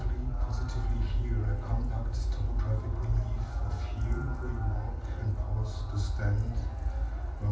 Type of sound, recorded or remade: recorded